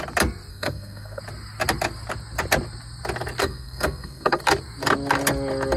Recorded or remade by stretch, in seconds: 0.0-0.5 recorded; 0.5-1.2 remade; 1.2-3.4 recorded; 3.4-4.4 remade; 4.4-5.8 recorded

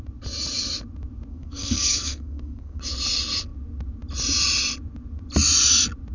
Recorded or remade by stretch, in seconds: 0.0-1.3 recorded; 1.3-2.8 remade; 2.8-6.1 recorded

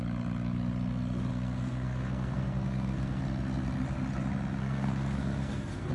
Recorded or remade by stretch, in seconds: 0.0-1.3 recorded; 1.3-3.2 remade; 3.2-4.6 recorded; 4.6-5.9 remade